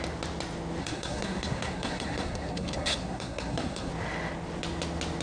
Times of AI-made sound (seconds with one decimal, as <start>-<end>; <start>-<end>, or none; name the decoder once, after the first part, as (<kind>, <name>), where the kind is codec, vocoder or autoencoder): 0.8-3.9 (codec, SNAC)